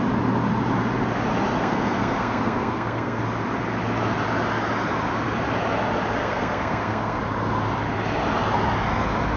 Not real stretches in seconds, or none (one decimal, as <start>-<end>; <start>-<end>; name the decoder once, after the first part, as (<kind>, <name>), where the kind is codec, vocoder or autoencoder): 1.6-3.2 (codec, SNAC); 6.2-7.2